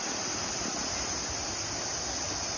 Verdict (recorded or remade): recorded